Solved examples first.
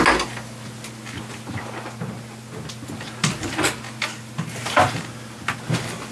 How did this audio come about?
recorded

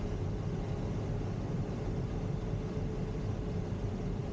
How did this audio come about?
recorded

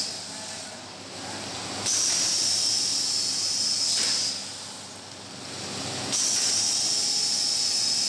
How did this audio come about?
recorded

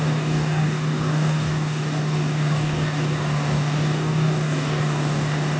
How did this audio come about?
remade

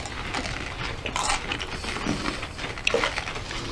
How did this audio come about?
recorded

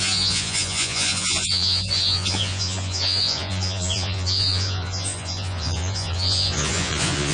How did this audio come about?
remade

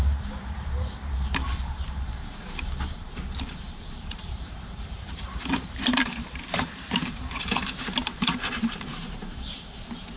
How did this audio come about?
remade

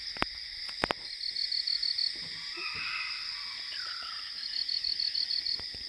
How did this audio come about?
recorded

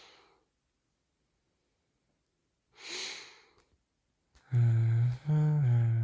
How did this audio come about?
recorded